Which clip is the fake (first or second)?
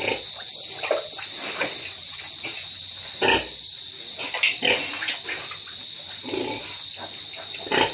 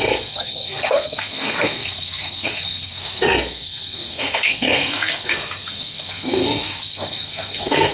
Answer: second